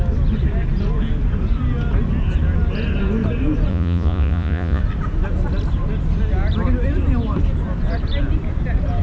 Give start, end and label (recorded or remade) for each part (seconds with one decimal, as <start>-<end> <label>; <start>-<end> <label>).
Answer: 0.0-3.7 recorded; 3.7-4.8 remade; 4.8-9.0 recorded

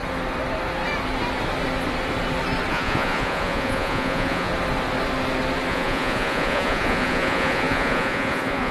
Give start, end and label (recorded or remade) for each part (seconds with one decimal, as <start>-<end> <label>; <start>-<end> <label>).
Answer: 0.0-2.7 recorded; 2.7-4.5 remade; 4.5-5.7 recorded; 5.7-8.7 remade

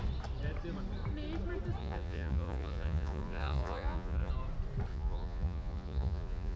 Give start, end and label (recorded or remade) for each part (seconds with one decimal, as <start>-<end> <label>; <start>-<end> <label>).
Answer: 0.0-1.8 recorded; 1.8-4.3 remade; 4.3-4.9 recorded; 4.9-6.6 remade

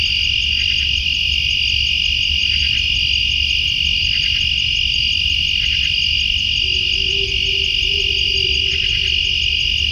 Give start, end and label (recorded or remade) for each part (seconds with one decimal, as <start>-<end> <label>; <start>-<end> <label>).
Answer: 0.0-9.9 recorded